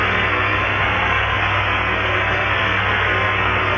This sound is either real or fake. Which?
fake